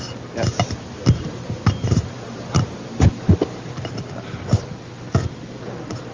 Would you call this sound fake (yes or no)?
no